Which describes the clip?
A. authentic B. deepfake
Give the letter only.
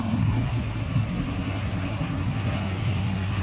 B